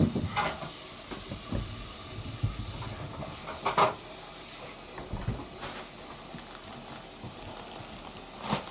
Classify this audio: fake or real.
real